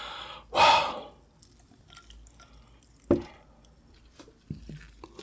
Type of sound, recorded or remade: recorded